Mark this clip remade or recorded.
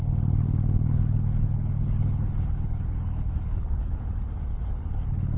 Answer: remade